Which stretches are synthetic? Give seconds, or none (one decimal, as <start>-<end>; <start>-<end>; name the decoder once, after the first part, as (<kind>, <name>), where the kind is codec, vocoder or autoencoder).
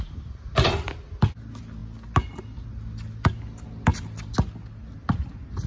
none